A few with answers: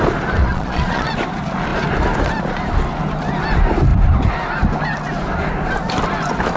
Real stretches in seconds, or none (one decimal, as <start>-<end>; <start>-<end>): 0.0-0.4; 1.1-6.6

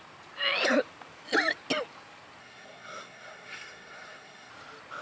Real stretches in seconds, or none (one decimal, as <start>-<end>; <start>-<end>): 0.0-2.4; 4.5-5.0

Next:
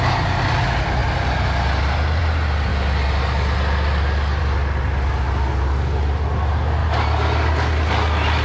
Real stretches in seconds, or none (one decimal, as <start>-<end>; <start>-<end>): 0.0-8.4

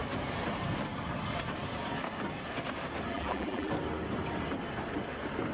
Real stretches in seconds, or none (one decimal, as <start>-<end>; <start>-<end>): 0.0-3.1; 3.7-5.5

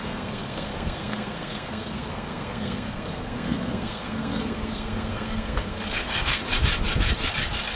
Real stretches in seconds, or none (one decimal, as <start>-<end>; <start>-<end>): 6.4-7.8